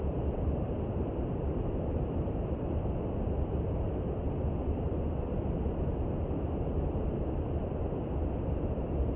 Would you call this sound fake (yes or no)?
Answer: yes